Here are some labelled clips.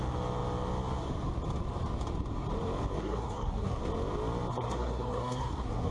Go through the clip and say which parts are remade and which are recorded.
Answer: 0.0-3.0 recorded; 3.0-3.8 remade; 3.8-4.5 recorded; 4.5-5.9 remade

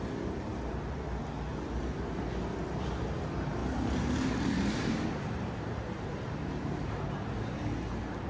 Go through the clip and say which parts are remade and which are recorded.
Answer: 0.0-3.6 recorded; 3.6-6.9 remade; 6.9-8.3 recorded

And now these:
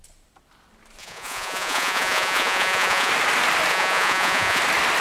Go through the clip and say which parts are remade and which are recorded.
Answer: 0.0-1.0 recorded; 1.0-3.1 remade; 3.1-3.7 recorded; 3.7-4.6 remade; 4.6-5.0 recorded

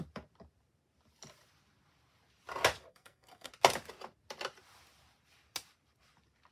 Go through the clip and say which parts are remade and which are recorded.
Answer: 0.0-2.9 recorded; 2.9-3.5 remade; 3.5-6.5 recorded